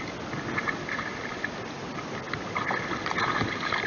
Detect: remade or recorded recorded